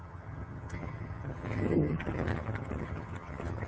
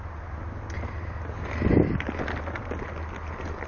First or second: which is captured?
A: second